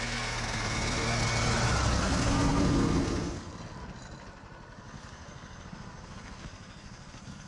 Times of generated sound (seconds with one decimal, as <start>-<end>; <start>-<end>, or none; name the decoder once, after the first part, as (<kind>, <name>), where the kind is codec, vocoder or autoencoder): 0.0-1.2 (codec, SNAC); 2.0-3.5; 4.8-7.5